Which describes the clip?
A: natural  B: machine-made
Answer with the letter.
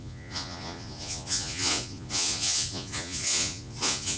B